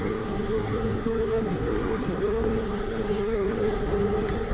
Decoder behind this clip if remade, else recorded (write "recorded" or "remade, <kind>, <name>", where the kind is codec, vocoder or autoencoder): remade, codec, SNAC